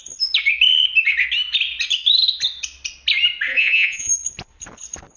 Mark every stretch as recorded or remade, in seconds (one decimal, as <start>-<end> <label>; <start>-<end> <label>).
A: 0.0-3.5 recorded; 3.5-4.1 remade; 4.1-5.2 recorded